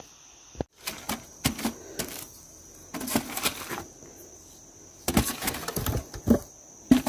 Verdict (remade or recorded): recorded